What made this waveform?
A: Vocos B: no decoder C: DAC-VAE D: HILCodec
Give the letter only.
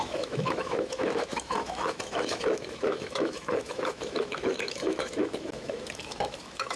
C